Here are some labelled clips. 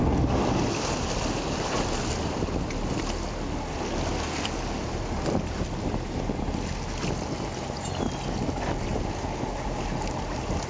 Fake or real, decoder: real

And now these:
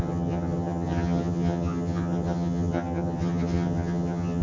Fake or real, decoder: fake, vocoder, HiFi-GAN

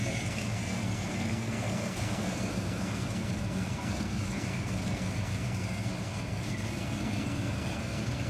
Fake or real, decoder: fake, codec, SNAC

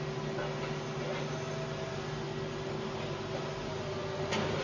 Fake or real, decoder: real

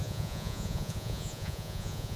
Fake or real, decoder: fake, vocoder, Vocos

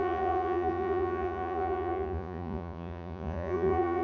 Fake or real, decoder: fake, vocoder, Vocos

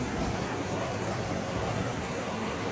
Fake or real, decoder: fake, codec, SNAC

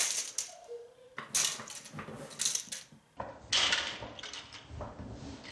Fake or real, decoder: real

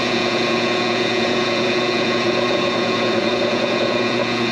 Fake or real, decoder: fake, vocoder, Vocos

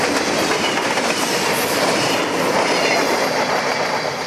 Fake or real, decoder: real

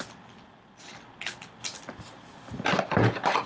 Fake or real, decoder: real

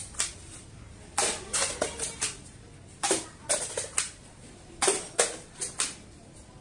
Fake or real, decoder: real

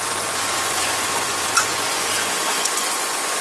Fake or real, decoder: fake, vocoder, Vocos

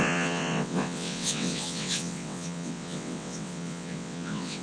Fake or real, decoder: fake, vocoder, WaveNeXt